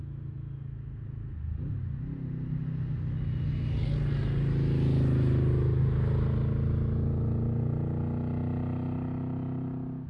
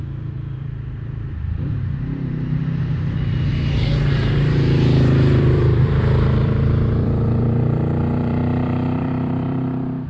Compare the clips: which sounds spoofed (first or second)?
second